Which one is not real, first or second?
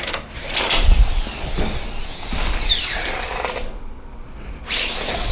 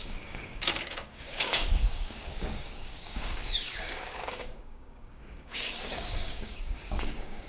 second